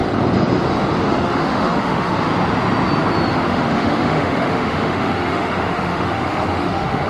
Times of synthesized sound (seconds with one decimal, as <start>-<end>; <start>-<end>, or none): 1.1-2.3; 3.3-7.1

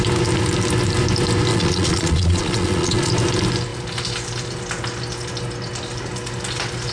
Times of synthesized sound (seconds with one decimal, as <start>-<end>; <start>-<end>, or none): 1.5-3.1

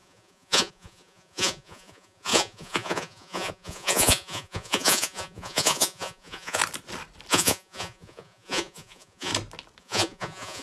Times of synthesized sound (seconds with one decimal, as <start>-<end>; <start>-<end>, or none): 0.0-6.6; 7.3-9.3; 9.8-10.6

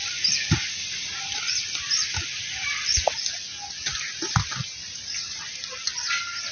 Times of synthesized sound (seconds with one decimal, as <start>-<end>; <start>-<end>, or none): none

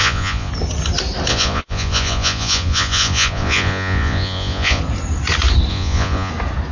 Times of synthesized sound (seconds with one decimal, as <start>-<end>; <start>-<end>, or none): 0.0-0.5; 1.3-4.8; 5.7-6.3

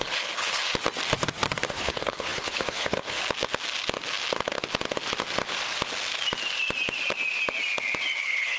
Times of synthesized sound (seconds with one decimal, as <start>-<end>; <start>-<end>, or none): 0.0-0.6; 1.7-3.2; 8.2-8.6

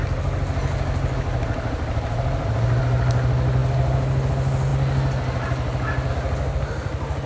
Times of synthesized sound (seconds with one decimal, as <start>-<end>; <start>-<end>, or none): none